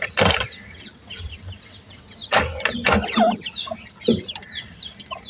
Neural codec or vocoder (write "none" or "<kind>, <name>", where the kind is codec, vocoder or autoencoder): none